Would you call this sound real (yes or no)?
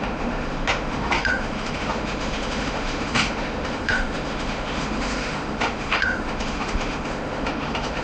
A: no